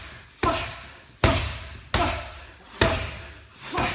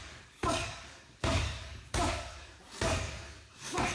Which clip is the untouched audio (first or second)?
first